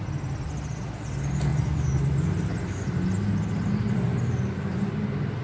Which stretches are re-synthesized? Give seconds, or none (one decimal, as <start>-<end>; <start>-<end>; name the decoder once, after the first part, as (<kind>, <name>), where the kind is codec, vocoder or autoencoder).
none